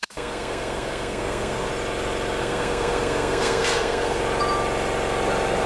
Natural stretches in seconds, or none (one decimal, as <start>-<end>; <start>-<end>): 1.7-2.4; 4.2-5.7